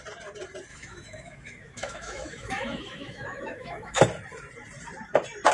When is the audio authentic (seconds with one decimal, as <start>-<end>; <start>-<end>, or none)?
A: 0.0-0.7; 4.0-5.5